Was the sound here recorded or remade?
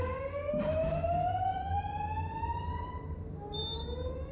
recorded